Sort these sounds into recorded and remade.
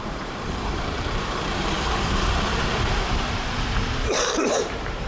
remade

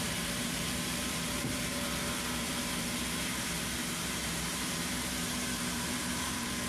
remade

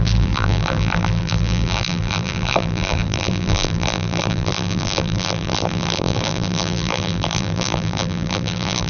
remade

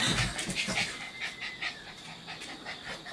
recorded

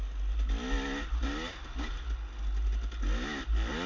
recorded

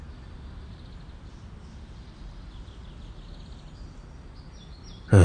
recorded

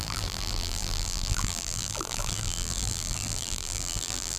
remade